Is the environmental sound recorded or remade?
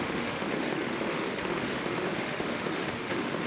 remade